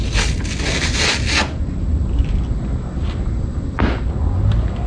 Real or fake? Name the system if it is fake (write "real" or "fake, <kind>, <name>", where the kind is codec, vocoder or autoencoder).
real